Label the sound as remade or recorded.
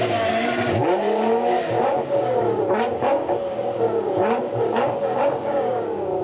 remade